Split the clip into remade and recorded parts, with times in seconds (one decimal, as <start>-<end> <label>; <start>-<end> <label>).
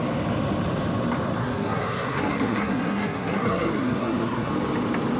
0.0-1.4 recorded; 1.4-4.5 remade; 4.5-5.2 recorded